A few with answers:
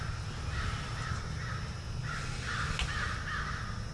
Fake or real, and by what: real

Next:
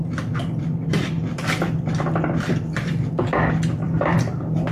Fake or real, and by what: fake, vocoder, BigVGAN v2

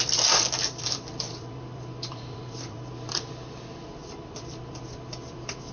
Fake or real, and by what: fake, vocoder, BigVGAN v2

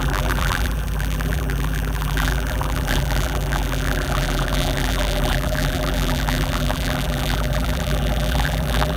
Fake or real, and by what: fake, vocoder, BigVGAN v2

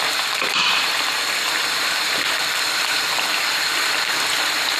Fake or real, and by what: fake, vocoder, BigVGAN v2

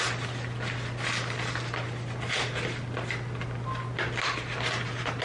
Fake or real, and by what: real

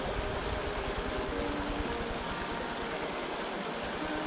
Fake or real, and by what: real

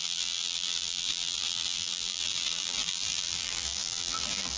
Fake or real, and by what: fake, vocoder, BigVGAN v2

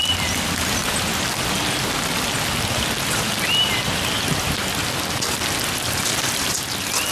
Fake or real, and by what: real